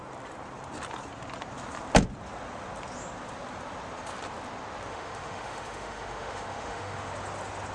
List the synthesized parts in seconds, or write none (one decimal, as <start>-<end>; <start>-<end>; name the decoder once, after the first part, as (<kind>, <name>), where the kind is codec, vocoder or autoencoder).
4.9-7.1 (autoencoder, DAC-VAE)